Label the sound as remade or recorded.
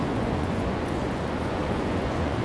remade